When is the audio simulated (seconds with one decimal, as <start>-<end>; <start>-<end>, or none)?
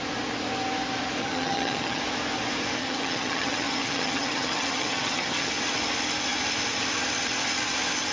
1.2-2.0; 2.8-5.5